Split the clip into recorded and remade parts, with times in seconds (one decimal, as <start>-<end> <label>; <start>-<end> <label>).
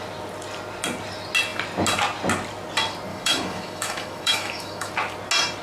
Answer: 0.0-3.1 recorded; 3.1-4.9 remade; 4.9-5.6 recorded